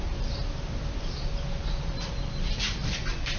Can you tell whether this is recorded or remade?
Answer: remade